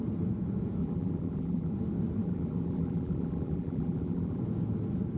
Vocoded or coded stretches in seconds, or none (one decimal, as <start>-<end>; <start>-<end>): 0.8-1.7; 2.2-4.4